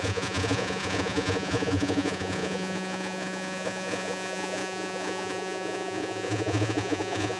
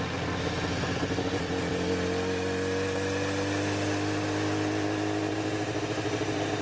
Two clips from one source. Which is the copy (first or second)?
first